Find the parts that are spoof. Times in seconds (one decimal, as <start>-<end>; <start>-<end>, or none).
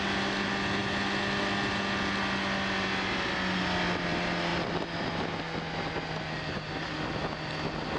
none